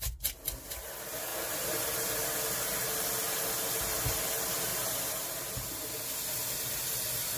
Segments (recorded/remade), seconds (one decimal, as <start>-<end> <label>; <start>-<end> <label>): 0.0-7.4 recorded